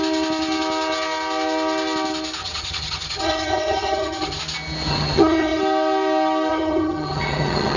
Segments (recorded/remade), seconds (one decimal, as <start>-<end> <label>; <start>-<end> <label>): 0.0-2.4 recorded; 2.4-4.4 remade; 4.4-4.9 recorded; 4.9-5.6 remade; 5.6-6.5 recorded; 6.5-7.8 remade